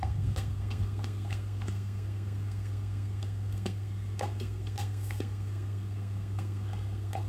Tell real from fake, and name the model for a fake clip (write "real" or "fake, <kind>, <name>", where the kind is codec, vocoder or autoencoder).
fake, codec, SNAC